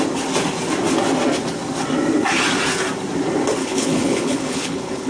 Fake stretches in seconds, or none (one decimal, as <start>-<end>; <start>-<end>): 3.6-5.1